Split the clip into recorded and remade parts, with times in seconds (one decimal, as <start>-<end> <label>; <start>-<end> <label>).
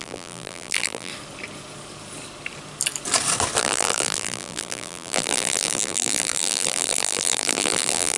0.0-1.1 remade; 1.1-3.6 recorded; 3.6-8.2 remade